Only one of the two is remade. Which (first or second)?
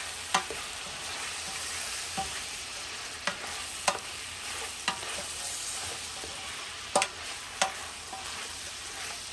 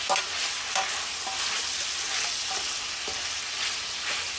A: first